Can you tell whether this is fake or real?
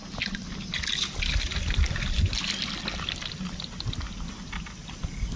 real